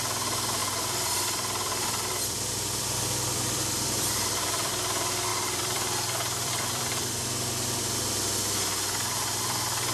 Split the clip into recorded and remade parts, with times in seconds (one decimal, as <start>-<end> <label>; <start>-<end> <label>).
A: 0.0-0.6 recorded; 0.6-4.7 remade; 4.7-5.3 recorded; 5.3-7.2 remade; 7.2-9.9 recorded